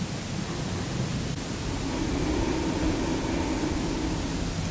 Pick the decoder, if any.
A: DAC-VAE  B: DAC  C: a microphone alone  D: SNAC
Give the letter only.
C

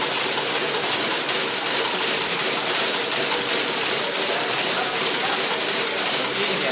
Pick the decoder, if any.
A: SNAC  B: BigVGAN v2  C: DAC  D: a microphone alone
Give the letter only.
D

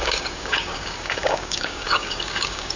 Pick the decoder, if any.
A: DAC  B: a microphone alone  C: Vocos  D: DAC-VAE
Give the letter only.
A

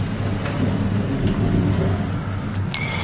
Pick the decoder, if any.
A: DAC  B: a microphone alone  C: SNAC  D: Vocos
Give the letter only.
B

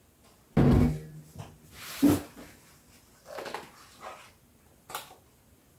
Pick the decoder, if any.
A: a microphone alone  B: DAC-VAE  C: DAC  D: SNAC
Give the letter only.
A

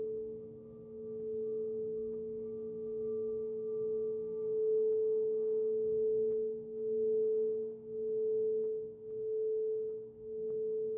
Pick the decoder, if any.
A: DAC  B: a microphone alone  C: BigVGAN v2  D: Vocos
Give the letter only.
A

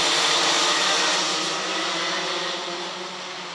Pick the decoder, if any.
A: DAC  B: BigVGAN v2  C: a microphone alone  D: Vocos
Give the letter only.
C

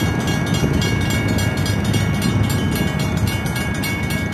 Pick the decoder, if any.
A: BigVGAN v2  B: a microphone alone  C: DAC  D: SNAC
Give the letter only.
B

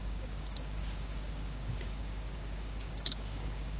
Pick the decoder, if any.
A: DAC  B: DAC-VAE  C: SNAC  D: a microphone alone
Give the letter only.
A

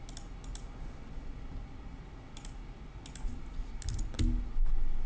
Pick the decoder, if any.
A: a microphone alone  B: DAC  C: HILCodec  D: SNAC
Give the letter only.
A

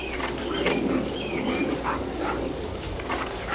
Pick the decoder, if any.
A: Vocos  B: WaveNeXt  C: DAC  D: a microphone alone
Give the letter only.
C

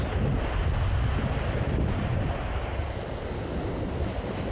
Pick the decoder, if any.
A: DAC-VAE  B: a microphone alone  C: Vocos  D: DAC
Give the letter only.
B